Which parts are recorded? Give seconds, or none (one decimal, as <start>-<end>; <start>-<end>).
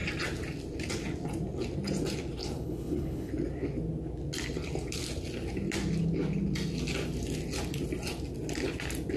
0.0-2.4; 3.3-9.2